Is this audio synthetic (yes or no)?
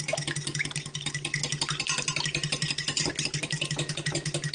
no